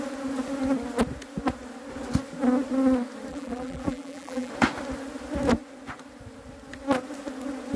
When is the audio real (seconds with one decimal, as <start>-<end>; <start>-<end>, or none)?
0.0-3.3; 4.5-7.8